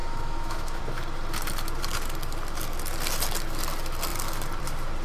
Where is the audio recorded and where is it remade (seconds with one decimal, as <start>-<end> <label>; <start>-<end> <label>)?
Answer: 0.0-0.8 remade; 0.8-5.0 recorded